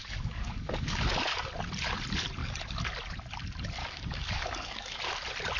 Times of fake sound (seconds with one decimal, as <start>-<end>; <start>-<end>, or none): 0.0-1.5; 2.4-2.9; 3.8-5.0